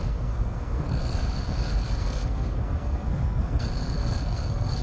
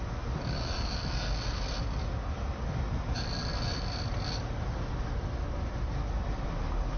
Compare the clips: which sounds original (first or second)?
second